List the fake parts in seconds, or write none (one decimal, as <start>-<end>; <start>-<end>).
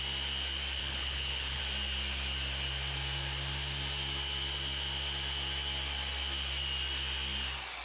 0.8-1.6